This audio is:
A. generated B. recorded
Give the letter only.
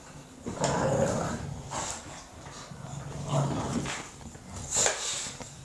B